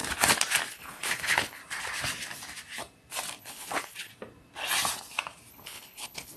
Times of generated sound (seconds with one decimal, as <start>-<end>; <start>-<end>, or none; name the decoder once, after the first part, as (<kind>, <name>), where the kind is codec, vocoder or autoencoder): 0.7-1.6 (codec, HILCodec); 3.4-4.1; 5.5-6.4